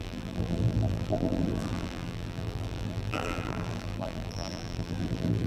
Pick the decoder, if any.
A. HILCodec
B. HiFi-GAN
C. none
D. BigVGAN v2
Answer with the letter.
D